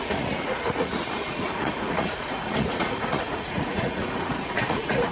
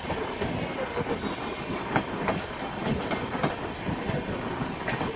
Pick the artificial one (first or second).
first